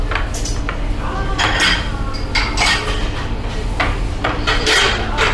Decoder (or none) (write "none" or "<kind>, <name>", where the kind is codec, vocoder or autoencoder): none